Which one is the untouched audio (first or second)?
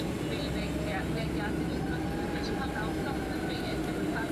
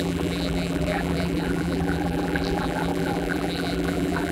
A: first